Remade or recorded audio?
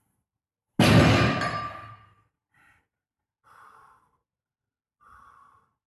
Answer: recorded